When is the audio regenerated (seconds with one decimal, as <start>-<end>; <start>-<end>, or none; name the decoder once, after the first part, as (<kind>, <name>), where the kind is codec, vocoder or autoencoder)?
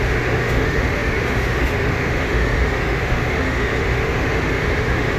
0.0-5.2 (autoencoder, DAC-VAE)